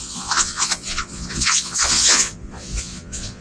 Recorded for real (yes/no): no